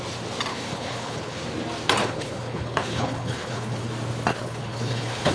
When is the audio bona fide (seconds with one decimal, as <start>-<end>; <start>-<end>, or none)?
0.0-0.5; 1.4-2.0; 3.9-4.3